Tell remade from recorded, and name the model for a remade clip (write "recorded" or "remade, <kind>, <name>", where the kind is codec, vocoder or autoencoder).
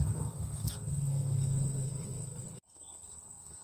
remade, codec, SNAC